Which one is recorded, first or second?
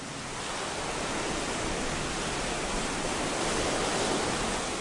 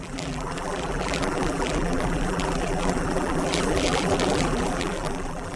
first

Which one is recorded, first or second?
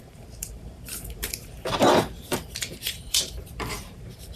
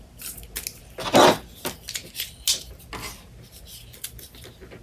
second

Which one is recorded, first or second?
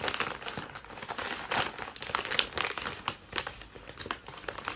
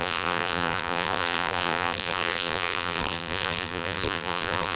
first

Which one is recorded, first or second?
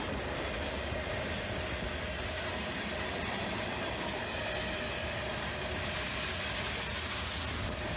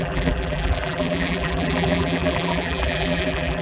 first